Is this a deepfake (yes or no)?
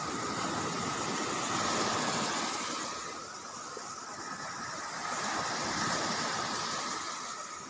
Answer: no